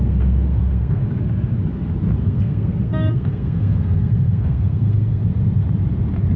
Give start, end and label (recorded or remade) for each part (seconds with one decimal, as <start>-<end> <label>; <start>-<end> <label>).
0.0-1.0 remade; 1.0-2.2 recorded; 2.2-5.2 remade; 5.2-6.4 recorded